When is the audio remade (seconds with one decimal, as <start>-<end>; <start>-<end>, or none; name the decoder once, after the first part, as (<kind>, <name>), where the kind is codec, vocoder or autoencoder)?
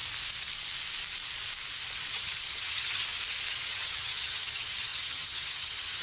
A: 2.1-3.0 (vocoder, HiFi-GAN); 3.5-6.0